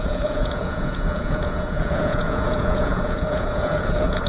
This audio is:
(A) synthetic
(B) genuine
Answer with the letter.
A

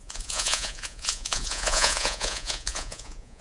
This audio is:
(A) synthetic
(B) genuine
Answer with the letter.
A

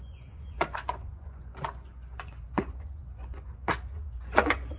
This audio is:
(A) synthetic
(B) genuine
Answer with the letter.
A